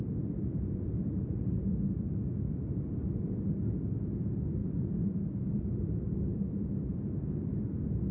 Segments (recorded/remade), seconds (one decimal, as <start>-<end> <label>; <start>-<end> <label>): 0.0-6.3 recorded; 6.3-7.4 remade; 7.4-8.1 recorded